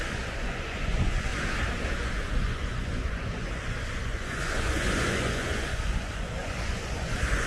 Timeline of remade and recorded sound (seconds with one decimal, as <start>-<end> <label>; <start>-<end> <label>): 0.0-1.3 remade; 1.3-1.9 recorded; 1.9-7.5 remade